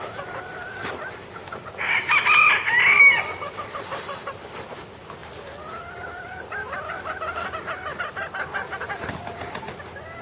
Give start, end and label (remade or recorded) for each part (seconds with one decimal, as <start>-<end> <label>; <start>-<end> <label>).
0.0-10.2 recorded